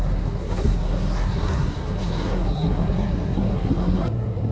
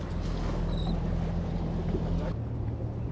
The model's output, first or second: first